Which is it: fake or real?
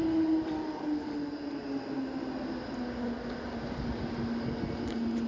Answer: real